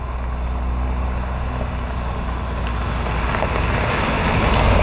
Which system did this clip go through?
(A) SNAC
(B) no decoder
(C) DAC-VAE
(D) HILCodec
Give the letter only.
B